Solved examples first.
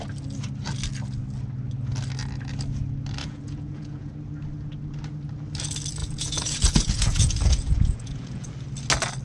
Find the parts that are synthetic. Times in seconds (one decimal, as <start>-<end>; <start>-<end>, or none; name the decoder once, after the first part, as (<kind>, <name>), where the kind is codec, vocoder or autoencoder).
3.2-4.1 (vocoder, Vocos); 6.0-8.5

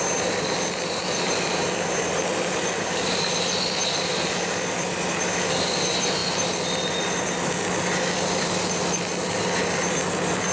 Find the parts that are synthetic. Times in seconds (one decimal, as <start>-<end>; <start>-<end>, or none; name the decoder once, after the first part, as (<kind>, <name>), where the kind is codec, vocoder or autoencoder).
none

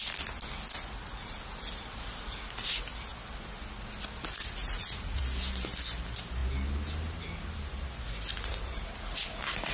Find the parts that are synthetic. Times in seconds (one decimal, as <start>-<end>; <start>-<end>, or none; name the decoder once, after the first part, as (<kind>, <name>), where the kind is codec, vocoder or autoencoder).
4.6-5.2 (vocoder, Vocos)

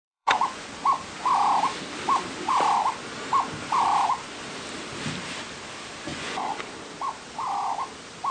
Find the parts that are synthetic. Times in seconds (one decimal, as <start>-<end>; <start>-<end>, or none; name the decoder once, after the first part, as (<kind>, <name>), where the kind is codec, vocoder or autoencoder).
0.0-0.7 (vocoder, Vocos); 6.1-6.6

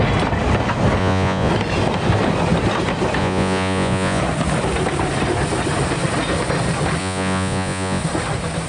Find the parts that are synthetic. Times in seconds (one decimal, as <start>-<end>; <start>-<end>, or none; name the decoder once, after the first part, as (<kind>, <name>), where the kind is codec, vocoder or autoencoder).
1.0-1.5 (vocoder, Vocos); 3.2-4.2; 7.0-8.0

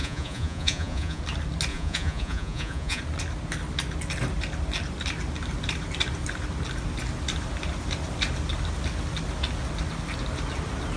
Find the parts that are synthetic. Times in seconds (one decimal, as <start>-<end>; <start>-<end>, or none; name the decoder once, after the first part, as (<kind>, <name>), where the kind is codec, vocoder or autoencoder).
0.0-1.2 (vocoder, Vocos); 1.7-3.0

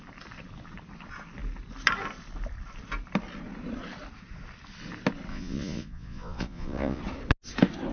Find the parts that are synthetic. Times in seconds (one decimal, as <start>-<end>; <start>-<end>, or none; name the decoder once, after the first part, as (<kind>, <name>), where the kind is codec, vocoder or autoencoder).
5.3-7.0 (vocoder, Vocos)